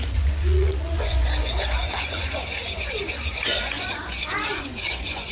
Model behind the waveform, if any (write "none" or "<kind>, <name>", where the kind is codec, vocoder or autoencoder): vocoder, Vocos